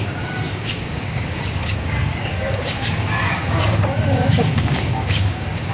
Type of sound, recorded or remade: remade